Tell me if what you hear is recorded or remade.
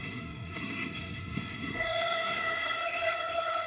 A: remade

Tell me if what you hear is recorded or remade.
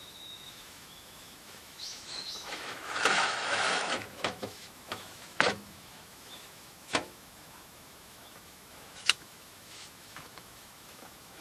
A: remade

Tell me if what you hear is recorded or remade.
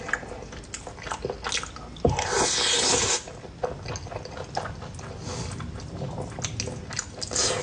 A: recorded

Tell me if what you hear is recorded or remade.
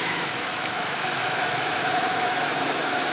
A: remade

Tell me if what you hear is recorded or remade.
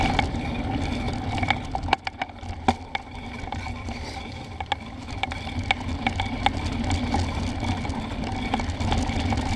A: recorded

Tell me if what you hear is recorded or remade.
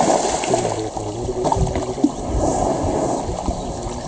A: recorded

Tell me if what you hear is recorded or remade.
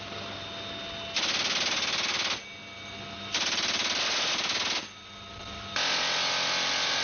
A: recorded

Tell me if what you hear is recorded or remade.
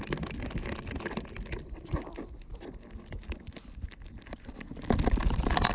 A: recorded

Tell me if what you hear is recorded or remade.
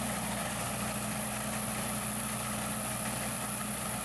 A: remade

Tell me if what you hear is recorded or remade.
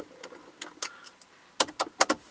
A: recorded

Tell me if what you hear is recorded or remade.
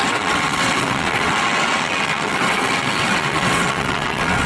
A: remade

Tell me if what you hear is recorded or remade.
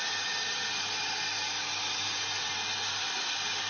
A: recorded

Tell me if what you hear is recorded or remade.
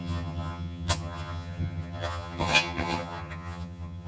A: remade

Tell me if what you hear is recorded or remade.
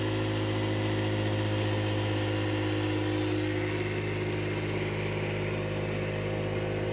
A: recorded